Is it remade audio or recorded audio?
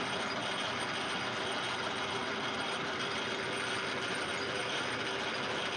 recorded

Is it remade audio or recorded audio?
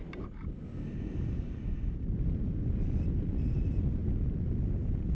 recorded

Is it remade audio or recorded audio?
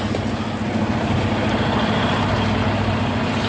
recorded